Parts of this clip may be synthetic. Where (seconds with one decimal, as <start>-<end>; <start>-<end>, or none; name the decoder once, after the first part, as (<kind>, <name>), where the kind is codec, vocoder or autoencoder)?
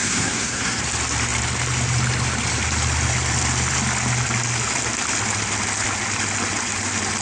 0.0-0.8 (codec, SNAC)